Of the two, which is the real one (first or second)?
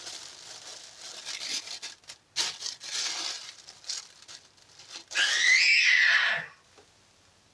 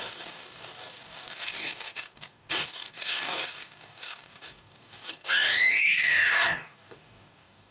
first